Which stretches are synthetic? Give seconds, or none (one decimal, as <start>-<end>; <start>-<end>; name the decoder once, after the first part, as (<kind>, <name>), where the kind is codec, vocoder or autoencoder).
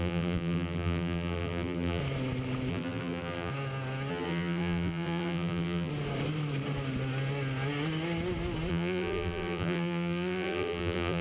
0.0-2.0 (vocoder, BigVGAN v2); 2.7-3.5; 4.1-5.9; 8.7-11.2